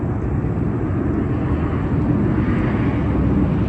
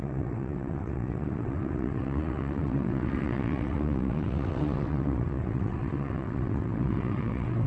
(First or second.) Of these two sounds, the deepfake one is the second